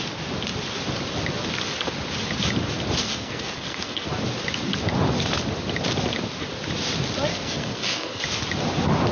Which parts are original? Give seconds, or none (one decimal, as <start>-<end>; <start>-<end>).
0.0-3.0; 4.1-7.3; 8.2-9.1